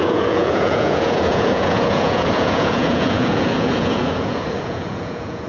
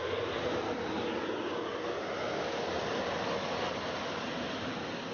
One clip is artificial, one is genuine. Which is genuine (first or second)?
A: second